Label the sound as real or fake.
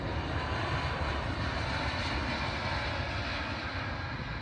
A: real